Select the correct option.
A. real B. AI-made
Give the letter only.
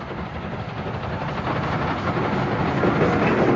A